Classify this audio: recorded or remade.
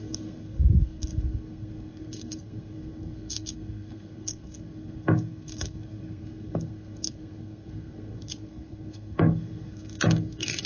remade